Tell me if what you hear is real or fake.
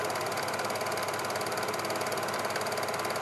real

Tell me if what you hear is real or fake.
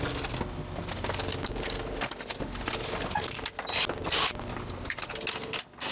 real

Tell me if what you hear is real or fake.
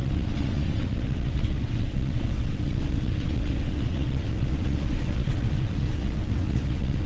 fake